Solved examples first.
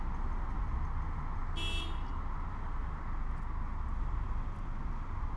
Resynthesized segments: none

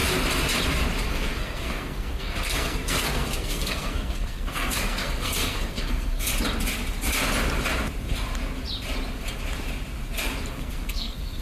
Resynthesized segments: 1.1-6.3 (codec, SNAC); 10.5-11.4